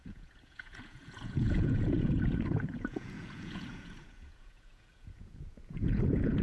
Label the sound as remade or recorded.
remade